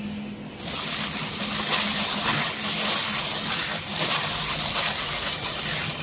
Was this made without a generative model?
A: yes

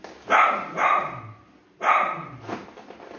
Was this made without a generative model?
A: yes